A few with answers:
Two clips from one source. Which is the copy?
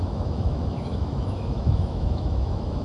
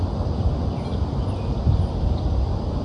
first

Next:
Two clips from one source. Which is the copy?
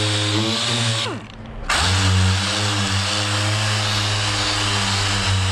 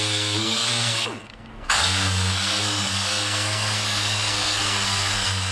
second